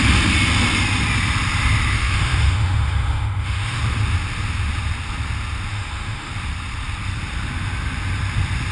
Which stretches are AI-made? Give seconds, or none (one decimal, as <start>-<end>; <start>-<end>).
1.9-3.8; 5.7-6.3